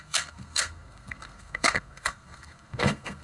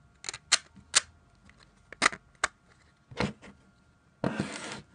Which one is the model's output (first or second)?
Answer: first